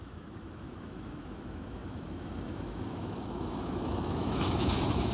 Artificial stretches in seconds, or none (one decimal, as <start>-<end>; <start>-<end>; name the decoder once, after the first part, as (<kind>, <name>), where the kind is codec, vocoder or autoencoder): 0.0-5.1 (autoencoder, DAC-VAE)